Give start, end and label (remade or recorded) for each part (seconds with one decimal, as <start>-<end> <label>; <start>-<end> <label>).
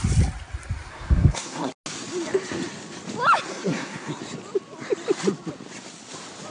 0.0-0.9 recorded; 0.9-1.7 remade; 1.7-3.5 recorded; 3.5-4.2 remade; 4.2-6.5 recorded